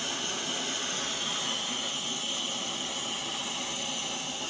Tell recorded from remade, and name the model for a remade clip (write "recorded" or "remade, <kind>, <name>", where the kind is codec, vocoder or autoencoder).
recorded